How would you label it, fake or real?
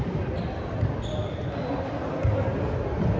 real